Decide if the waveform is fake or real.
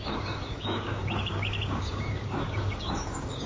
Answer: fake